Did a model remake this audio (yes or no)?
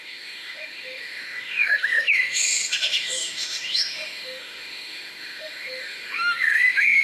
yes